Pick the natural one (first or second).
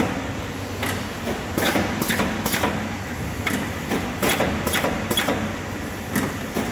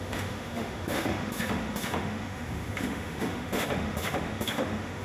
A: first